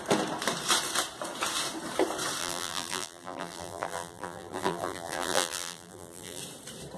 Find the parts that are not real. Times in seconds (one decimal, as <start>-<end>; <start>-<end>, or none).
2.4-6.4